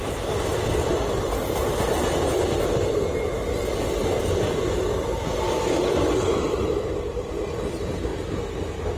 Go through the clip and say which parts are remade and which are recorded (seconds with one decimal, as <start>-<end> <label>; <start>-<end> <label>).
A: 0.0-1.6 remade; 1.6-4.2 recorded; 4.2-9.0 remade